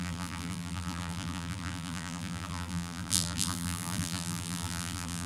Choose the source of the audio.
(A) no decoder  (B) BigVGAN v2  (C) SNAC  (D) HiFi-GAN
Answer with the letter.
B